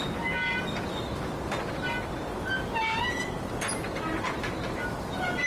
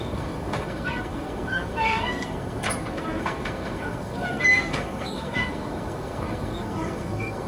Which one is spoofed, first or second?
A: second